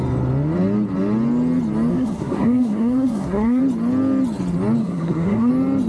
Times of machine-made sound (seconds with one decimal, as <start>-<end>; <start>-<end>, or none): 1.9-3.6; 4.8-5.5

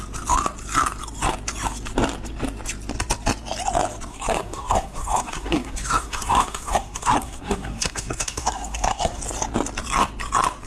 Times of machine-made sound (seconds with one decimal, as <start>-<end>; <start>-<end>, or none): 4.1-9.2

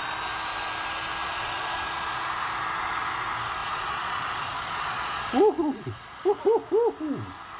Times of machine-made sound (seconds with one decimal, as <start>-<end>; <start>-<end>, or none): 1.2-2.3; 3.6-6.4

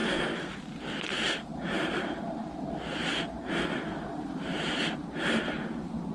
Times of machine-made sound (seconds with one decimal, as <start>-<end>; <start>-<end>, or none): 0.0-0.6; 1.5-4.8

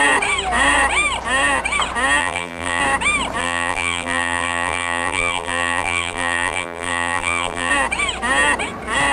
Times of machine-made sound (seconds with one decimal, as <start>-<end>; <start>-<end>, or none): 2.2-2.8; 3.4-7.7

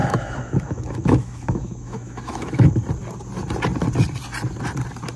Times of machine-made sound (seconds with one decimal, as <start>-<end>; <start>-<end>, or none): 0.0-2.7

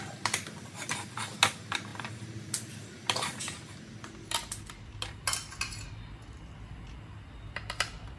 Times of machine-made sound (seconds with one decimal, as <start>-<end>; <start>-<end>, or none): none